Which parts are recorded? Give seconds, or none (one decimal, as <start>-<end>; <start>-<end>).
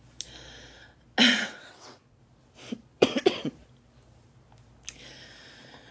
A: 0.0-1.3; 2.2-2.9; 3.5-5.9